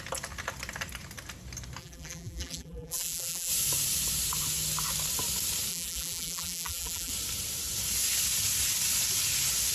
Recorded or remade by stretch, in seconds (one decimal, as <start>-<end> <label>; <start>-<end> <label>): 0.0-1.8 recorded; 1.8-3.5 remade; 3.5-5.7 recorded; 5.7-7.1 remade; 7.1-9.7 recorded